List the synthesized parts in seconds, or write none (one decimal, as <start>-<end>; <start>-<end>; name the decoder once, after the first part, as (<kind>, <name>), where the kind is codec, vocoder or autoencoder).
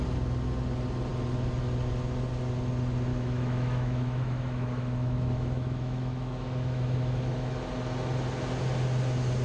3.1-7.6 (autoencoder, DAC-VAE)